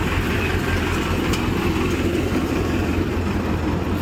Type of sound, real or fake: fake